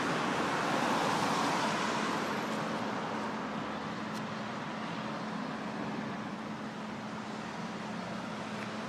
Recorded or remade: recorded